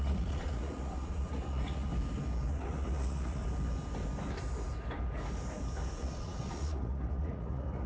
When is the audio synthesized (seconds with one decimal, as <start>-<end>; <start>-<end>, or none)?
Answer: 0.0-1.9; 2.5-3.4; 5.9-7.9